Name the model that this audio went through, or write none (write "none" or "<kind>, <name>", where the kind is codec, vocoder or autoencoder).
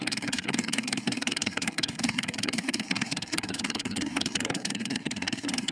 codec, SNAC